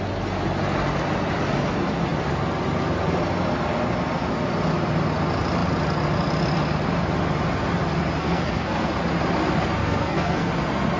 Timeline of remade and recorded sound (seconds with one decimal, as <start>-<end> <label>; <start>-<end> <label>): 0.0-8.2 recorded; 8.2-8.9 remade; 8.9-9.8 recorded; 9.8-10.5 remade; 10.5-11.0 recorded